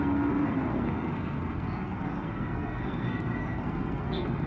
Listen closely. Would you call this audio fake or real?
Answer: fake